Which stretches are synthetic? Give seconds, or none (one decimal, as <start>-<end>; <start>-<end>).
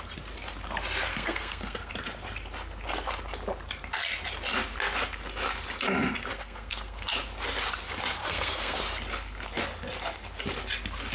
1.1-1.9; 6.3-7.1; 8.2-8.8